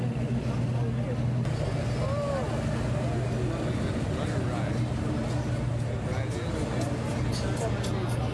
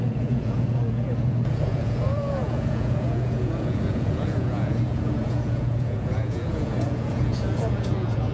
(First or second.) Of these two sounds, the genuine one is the first